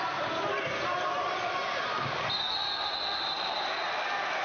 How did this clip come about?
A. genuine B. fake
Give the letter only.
A